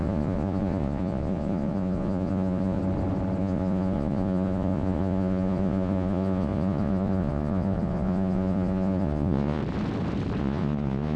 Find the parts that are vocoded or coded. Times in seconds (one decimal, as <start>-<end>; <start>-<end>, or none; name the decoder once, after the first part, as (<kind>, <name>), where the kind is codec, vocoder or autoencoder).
0.0-2.8 (vocoder, Vocos); 3.4-9.6; 10.4-11.2